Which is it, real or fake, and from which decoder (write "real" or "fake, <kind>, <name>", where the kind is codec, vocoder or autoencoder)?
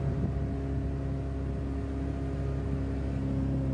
real